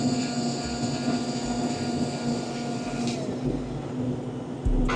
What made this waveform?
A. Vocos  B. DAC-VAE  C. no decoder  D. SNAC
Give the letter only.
C